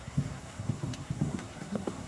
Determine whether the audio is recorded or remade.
remade